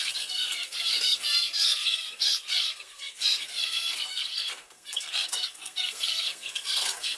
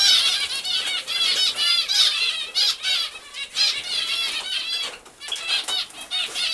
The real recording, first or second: second